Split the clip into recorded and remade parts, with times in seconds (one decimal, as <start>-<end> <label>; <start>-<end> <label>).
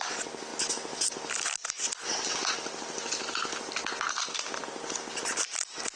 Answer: 0.0-6.0 recorded